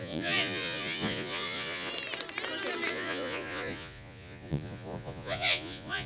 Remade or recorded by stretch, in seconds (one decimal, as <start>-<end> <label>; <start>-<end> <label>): 0.0-1.9 remade; 1.9-2.9 recorded; 2.9-6.1 remade